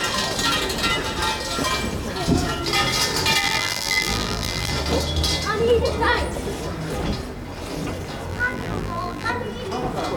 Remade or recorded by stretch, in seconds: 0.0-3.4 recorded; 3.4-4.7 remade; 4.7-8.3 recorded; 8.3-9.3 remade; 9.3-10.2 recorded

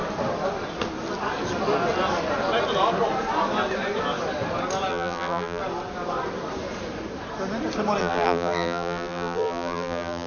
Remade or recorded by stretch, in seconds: 0.0-4.9 recorded; 4.9-5.6 remade; 5.6-8.0 recorded; 8.0-10.3 remade

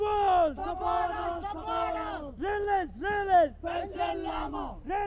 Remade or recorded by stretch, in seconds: 0.0-5.1 recorded

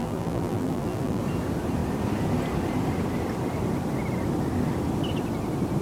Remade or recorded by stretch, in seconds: 0.0-1.2 remade; 1.2-5.8 recorded

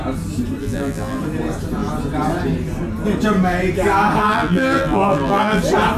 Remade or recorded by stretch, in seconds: 0.0-0.6 recorded; 0.6-1.2 remade; 1.2-4.2 recorded; 4.2-5.6 remade; 5.6-6.0 recorded

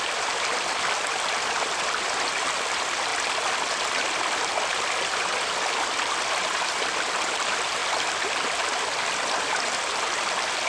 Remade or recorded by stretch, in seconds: 0.0-3.1 remade; 3.1-4.3 recorded; 4.3-7.8 remade; 7.8-9.7 recorded; 9.7-10.7 remade

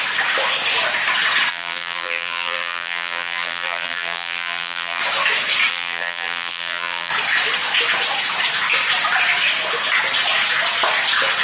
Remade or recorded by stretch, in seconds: 0.0-1.5 recorded; 1.5-5.0 remade; 5.0-5.7 recorded; 5.7-7.1 remade; 7.1-11.4 recorded